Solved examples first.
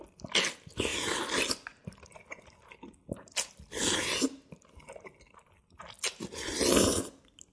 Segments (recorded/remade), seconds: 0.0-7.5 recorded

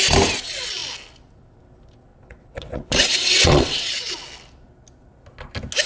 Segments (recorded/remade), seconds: 0.0-2.1 recorded; 2.1-4.1 remade; 4.1-5.9 recorded

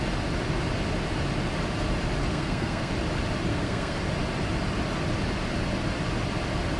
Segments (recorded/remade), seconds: 0.0-2.3 recorded; 2.3-2.9 remade; 2.9-3.5 recorded; 3.5-4.0 remade; 4.0-6.8 recorded